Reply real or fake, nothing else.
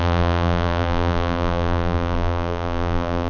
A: fake